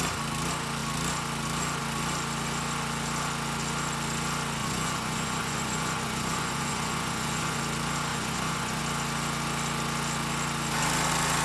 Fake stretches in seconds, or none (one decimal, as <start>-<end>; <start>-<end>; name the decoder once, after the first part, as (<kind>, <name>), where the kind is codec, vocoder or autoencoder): 4.6-7.6 (vocoder, Vocos); 8.1-8.8